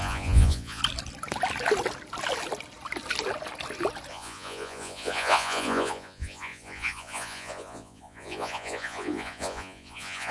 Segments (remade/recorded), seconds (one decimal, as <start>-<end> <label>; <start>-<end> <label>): 0.0-0.8 remade; 0.8-4.1 recorded; 4.1-10.3 remade